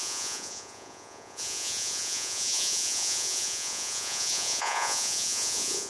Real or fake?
fake